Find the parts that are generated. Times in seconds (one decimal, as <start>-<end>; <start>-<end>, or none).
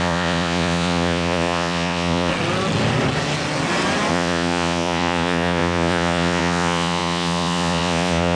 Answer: 0.0-2.3; 4.1-8.3